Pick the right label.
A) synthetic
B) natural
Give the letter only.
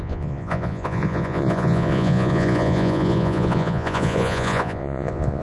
A